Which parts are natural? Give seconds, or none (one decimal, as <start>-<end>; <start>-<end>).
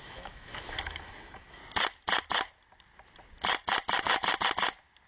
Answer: 1.6-5.1